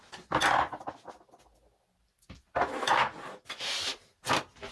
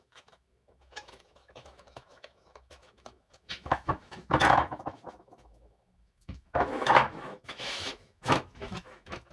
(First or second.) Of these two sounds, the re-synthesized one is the second